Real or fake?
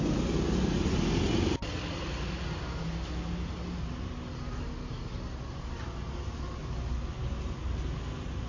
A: real